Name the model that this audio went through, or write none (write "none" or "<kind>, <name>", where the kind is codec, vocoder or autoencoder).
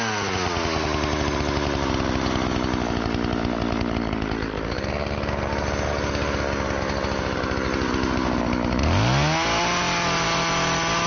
none